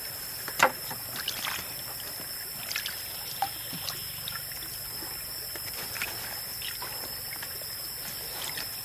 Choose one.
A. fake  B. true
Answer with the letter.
B